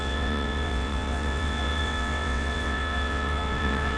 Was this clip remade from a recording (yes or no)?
yes